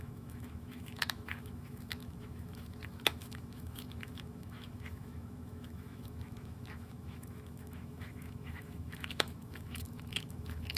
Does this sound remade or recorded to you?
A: remade